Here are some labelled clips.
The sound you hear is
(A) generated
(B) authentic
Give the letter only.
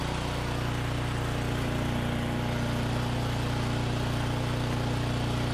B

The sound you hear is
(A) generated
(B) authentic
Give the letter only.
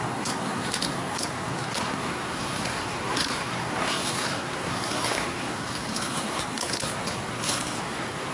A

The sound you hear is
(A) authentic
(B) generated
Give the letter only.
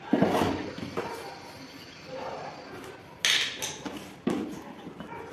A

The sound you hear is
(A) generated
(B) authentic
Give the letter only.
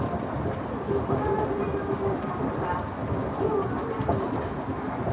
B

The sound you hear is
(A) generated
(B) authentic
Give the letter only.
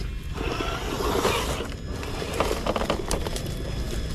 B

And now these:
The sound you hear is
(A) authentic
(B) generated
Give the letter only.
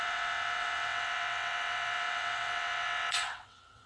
B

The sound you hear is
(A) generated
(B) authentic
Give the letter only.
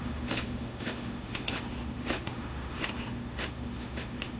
A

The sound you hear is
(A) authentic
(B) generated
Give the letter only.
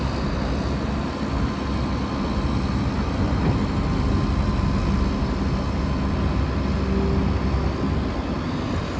A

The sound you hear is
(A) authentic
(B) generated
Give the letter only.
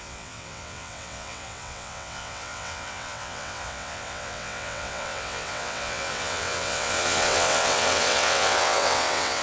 B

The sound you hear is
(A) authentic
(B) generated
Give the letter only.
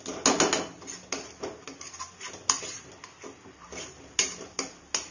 A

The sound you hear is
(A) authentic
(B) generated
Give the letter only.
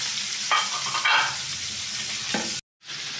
A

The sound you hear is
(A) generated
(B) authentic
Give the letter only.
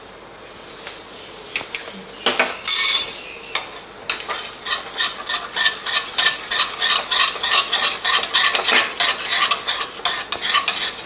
B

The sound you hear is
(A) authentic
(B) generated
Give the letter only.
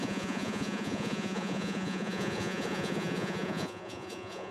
B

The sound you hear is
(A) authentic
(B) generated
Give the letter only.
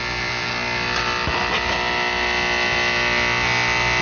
A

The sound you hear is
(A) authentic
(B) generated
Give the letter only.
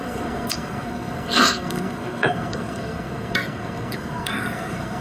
B